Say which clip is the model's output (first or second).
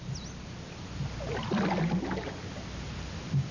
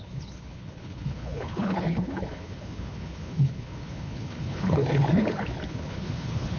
second